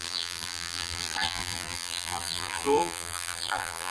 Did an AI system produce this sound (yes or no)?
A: yes